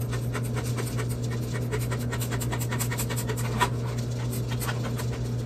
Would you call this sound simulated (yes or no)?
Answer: no